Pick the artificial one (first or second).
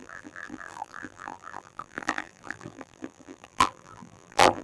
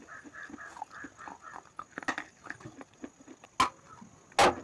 first